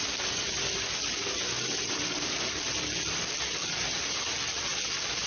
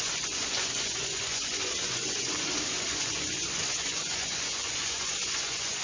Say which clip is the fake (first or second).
second